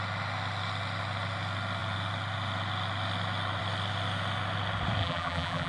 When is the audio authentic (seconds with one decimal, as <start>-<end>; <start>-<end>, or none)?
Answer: 0.0-5.0